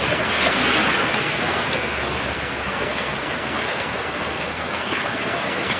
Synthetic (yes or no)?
yes